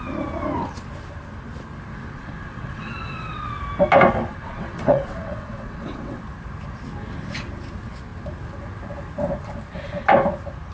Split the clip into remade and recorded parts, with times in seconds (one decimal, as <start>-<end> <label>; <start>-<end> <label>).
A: 0.0-1.9 recorded; 1.9-3.6 remade; 3.6-4.3 recorded; 4.3-6.2 remade; 6.2-10.7 recorded